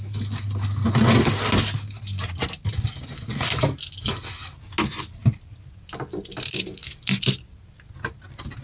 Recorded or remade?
recorded